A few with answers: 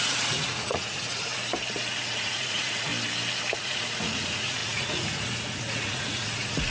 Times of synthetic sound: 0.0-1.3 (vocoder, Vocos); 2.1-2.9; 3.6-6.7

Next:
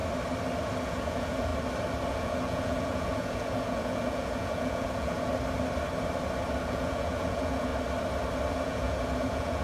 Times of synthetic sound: 0.8-1.5 (vocoder, Vocos); 2.1-5.3; 6.6-7.7; 8.5-9.6

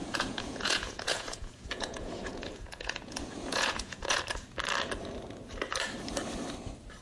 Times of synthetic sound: 0.0-4.2 (vocoder, Vocos)

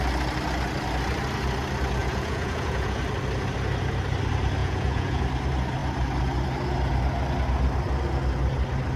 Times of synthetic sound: 2.0-3.0 (vocoder, Vocos); 4.6-5.2